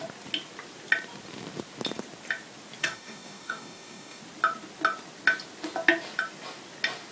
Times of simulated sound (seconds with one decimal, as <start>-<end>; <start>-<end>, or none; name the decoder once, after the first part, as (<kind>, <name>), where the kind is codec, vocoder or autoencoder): 2.8-4.2 (codec, DAC)